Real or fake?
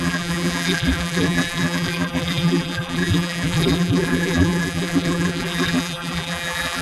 fake